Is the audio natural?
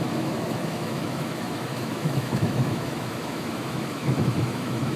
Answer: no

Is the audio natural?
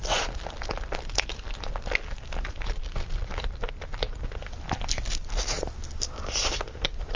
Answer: yes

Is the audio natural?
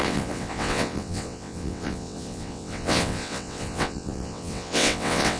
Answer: no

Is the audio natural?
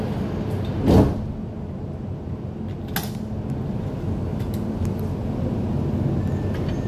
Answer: yes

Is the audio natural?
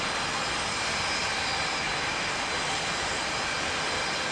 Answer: yes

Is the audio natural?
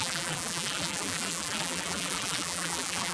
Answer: no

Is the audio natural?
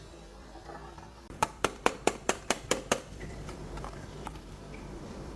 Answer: no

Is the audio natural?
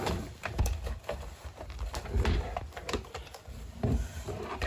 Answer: no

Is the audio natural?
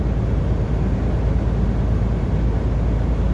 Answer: yes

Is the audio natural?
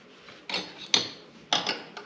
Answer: yes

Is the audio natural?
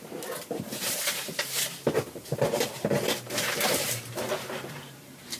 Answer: no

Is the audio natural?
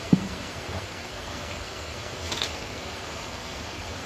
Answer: no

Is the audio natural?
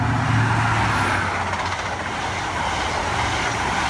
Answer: yes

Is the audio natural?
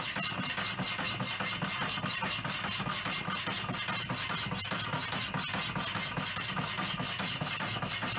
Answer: yes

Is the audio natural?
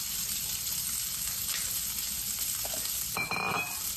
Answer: yes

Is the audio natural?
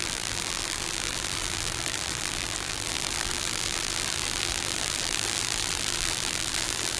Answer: no